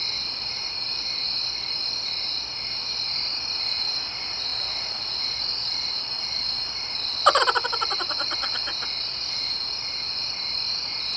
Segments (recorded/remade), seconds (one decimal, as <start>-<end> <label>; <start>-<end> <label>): 0.0-4.5 recorded; 4.5-7.4 remade; 7.4-11.2 recorded